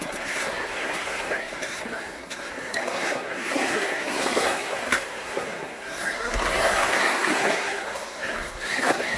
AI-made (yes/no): yes